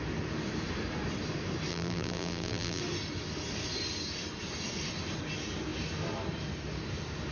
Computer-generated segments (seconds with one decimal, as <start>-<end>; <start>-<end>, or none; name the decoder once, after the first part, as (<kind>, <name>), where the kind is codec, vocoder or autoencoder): 1.7-2.8 (vocoder, BigVGAN v2)